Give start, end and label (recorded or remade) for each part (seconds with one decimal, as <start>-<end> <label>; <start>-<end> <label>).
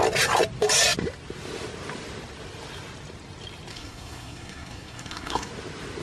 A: 0.0-3.7 recorded; 3.7-5.5 remade; 5.5-6.0 recorded